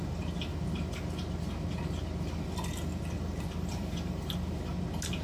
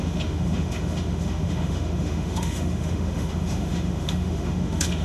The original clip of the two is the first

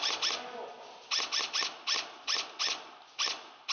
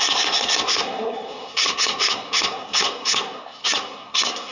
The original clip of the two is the first